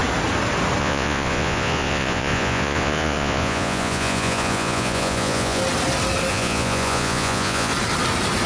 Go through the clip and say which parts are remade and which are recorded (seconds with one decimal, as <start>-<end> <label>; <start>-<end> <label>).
0.0-0.8 recorded; 0.8-5.6 remade; 5.6-6.3 recorded; 6.3-7.7 remade; 7.7-8.5 recorded